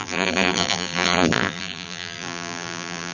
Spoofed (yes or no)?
yes